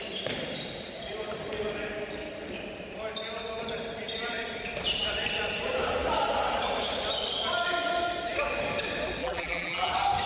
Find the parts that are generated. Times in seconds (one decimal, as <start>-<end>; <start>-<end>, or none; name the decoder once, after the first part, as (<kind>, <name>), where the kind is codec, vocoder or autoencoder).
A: 9.2-9.9 (vocoder, BigVGAN v2)